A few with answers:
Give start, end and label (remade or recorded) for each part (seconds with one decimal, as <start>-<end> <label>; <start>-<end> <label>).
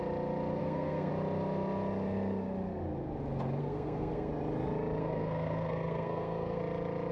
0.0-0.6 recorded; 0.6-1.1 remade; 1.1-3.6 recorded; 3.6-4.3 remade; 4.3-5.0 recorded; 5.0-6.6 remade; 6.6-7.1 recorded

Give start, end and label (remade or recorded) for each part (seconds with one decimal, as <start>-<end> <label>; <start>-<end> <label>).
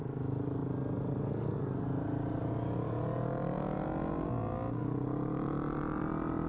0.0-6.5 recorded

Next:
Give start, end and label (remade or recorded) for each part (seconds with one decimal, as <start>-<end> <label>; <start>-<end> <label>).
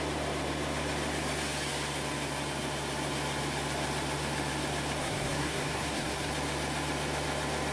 0.0-5.0 recorded; 5.0-6.3 remade; 6.3-7.7 recorded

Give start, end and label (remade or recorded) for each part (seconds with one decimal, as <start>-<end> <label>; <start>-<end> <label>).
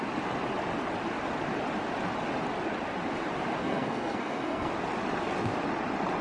0.0-3.6 recorded; 3.6-4.7 remade; 4.7-6.2 recorded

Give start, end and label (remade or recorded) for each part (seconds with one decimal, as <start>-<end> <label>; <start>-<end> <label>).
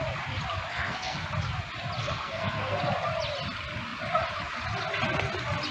0.0-0.7 recorded; 0.7-1.3 remade; 1.3-2.0 recorded; 2.0-2.8 remade; 2.8-5.7 recorded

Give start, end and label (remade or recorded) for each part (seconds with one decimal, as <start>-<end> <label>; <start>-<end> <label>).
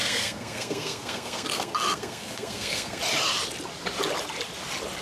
0.0-3.0 remade; 3.0-5.0 recorded